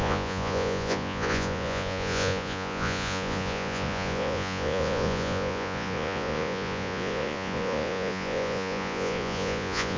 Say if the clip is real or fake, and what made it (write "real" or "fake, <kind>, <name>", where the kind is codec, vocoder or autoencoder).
fake, vocoder, Vocos